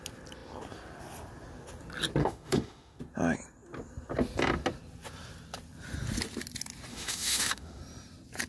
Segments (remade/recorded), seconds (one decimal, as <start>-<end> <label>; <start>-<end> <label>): 0.0-2.2 recorded; 2.2-3.0 remade; 3.0-6.9 recorded; 6.9-7.8 remade; 7.8-8.5 recorded